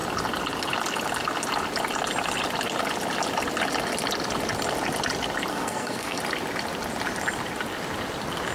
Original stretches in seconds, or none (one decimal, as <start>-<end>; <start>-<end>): 0.0-5.5; 6.2-8.5